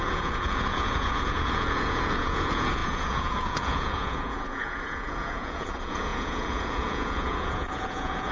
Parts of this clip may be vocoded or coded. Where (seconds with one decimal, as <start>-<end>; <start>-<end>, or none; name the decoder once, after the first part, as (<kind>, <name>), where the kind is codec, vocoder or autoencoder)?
0.0-8.3 (vocoder, Vocos)